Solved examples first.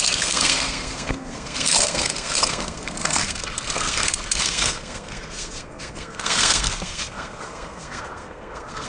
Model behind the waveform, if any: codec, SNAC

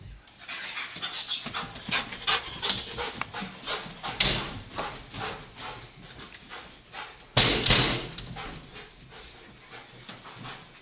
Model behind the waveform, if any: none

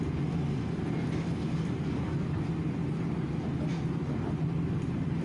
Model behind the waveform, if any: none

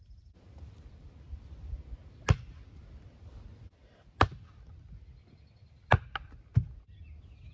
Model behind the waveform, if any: none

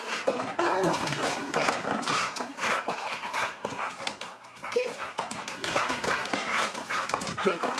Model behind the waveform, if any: codec, SNAC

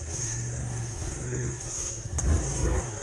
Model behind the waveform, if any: codec, SNAC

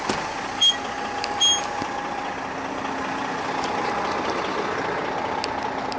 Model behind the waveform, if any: none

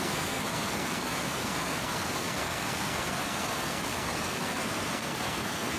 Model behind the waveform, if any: codec, SNAC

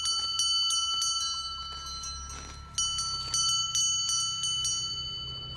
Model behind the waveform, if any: none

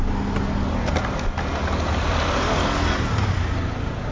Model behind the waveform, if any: none